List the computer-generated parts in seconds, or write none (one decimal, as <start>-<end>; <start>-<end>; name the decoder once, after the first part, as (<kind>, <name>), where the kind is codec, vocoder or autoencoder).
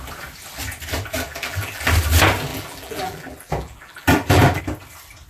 1.3-1.8 (vocoder, BigVGAN v2); 2.5-4.6